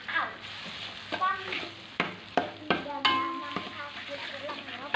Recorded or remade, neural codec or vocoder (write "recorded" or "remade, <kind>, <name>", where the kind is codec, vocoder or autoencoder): recorded